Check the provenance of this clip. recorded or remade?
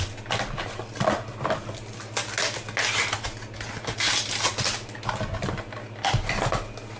recorded